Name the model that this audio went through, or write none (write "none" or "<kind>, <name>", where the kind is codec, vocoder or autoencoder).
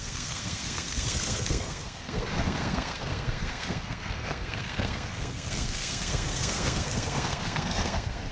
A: codec, SNAC